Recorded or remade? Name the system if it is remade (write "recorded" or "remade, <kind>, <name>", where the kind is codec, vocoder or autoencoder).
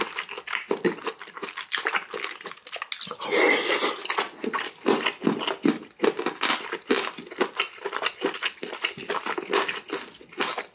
recorded